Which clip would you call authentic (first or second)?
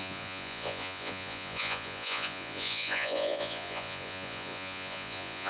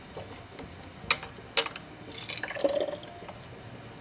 second